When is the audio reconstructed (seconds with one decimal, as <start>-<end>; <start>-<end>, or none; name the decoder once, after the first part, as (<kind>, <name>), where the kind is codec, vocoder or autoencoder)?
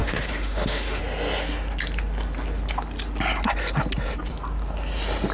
0.0-1.0 (autoencoder, DAC-VAE)